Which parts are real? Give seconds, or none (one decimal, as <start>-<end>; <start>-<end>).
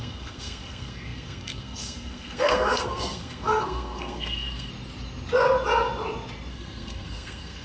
4.7-6.5